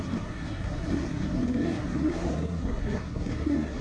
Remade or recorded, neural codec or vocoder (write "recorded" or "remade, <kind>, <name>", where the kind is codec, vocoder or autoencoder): remade, codec, SNAC